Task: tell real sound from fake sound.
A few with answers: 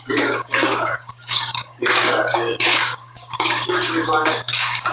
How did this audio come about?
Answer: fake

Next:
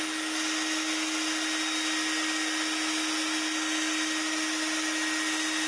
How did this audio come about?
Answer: real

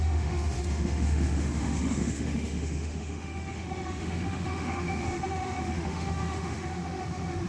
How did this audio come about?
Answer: fake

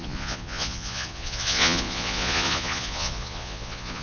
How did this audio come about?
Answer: fake